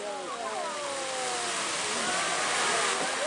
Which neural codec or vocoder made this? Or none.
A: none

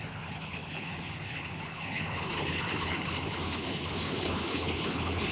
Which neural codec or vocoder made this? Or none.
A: codec, HILCodec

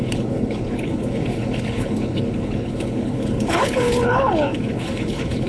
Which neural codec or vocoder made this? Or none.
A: codec, HILCodec